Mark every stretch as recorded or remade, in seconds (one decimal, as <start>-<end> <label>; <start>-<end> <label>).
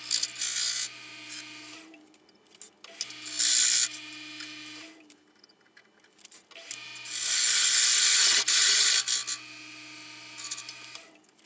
0.0-8.1 recorded; 8.1-8.9 remade; 8.9-11.5 recorded